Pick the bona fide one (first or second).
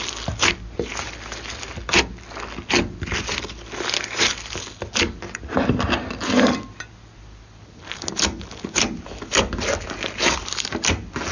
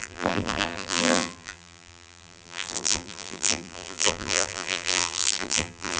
first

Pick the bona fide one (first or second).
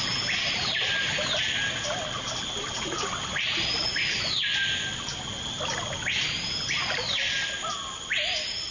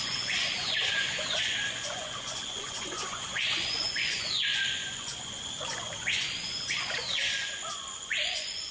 first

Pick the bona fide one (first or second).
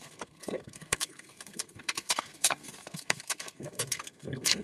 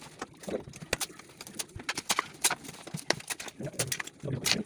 second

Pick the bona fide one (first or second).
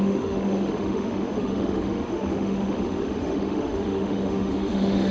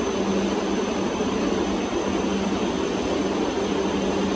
second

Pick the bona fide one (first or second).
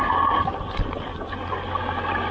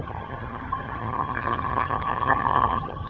first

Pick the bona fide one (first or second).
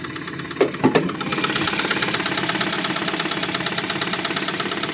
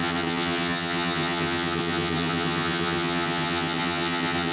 first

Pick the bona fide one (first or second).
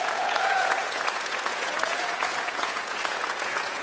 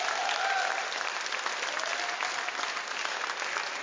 second